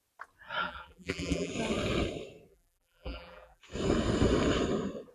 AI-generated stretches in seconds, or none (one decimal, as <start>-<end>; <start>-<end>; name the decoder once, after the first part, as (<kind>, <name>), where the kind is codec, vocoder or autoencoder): 0.6-1.5 (vocoder, BigVGAN v2); 2.5-3.6